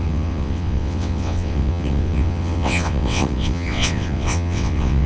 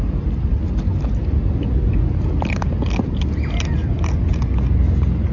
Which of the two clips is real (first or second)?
second